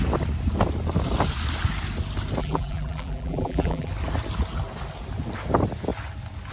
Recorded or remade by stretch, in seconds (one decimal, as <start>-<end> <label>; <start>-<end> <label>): 0.0-2.4 recorded; 2.4-3.9 remade; 3.9-6.5 recorded